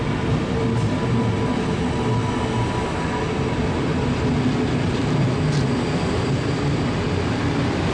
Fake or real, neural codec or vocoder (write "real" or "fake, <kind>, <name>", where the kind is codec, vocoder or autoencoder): real